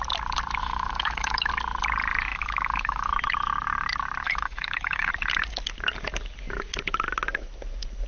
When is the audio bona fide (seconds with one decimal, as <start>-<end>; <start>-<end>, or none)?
0.0-0.6; 1.5-2.3; 3.1-4.2; 5.1-8.1

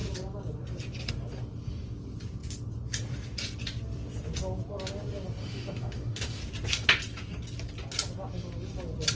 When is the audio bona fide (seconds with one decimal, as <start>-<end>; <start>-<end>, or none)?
0.0-5.4; 6.4-9.1

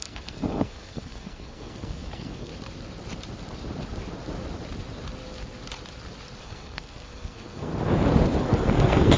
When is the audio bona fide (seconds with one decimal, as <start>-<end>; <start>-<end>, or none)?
2.5-6.4; 7.7-8.4